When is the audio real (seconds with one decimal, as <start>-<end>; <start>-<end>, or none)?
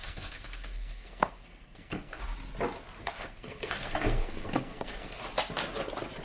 2.2-3.0; 5.2-6.2